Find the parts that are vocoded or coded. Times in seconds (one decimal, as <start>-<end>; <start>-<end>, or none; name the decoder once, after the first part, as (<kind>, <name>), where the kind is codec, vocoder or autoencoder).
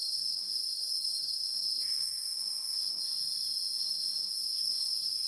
0.0-3.0 (codec, SNAC); 3.8-5.3